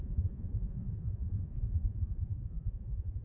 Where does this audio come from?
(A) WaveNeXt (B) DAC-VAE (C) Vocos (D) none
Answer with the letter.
C